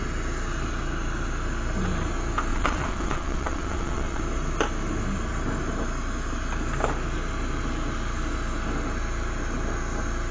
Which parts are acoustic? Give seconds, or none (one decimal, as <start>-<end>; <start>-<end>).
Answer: 0.0-2.5; 4.2-10.3